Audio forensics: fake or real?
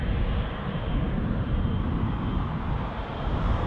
fake